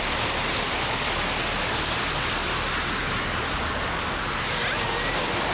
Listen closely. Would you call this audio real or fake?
real